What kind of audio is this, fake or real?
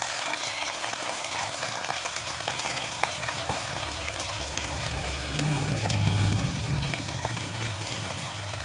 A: fake